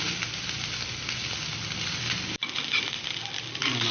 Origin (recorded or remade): recorded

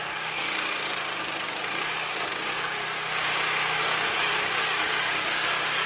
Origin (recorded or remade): remade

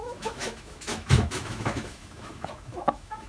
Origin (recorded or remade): remade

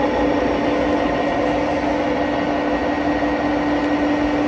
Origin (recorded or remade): recorded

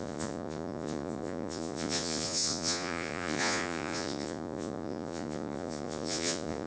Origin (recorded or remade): remade